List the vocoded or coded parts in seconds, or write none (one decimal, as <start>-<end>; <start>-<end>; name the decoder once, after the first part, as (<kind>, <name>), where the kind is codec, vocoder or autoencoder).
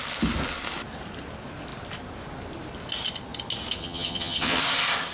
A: 3.8-4.6 (vocoder, HiFi-GAN)